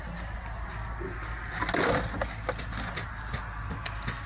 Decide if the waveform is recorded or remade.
recorded